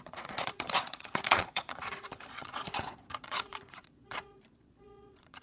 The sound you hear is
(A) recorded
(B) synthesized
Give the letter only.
B